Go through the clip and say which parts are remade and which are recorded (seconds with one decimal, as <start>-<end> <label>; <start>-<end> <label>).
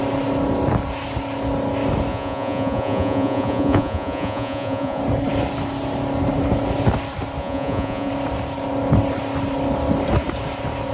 0.0-2.1 recorded; 2.1-5.0 remade; 5.0-7.4 recorded; 7.4-8.1 remade; 8.1-10.9 recorded